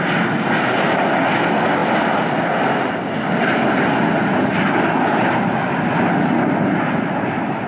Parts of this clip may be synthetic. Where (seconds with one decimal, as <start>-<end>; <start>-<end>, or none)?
none